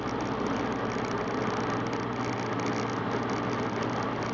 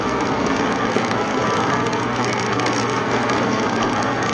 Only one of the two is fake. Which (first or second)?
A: second